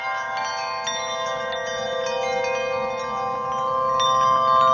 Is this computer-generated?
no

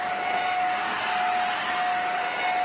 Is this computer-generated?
no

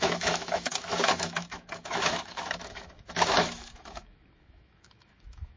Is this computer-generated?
yes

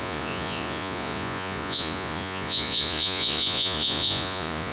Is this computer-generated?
yes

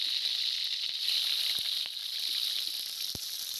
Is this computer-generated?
no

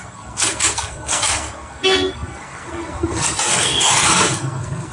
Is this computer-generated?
yes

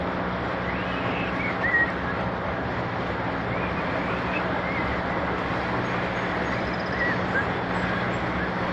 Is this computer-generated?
no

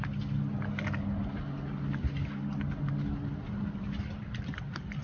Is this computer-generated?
no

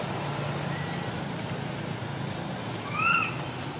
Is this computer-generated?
no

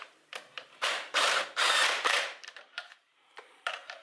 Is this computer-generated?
yes